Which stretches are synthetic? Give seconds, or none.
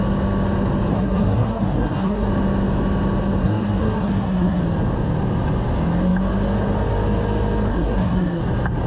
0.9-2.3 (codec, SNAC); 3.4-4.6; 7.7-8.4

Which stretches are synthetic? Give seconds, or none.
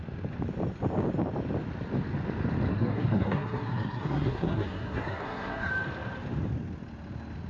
2.7-5.7 (codec, SNAC)